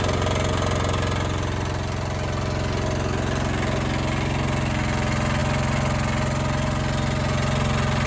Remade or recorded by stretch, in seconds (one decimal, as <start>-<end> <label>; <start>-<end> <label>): 0.0-8.1 recorded